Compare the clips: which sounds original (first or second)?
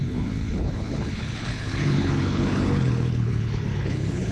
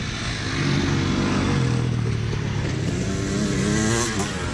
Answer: second